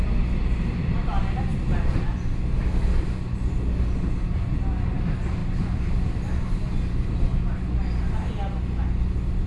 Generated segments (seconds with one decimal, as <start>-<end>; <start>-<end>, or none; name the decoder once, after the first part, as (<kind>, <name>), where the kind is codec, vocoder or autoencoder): none